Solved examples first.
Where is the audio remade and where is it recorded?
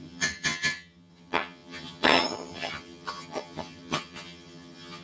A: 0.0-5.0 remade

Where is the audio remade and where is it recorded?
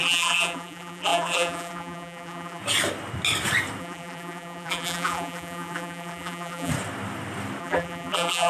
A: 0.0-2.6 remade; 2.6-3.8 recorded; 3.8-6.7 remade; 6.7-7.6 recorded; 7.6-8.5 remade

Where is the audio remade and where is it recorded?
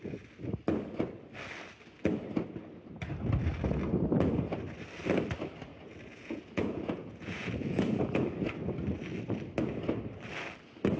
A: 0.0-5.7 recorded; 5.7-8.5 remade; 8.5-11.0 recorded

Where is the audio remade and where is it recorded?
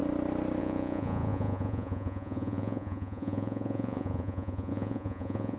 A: 0.0-0.6 recorded; 0.6-5.6 remade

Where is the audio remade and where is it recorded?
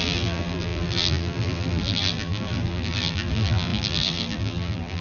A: 0.0-5.0 remade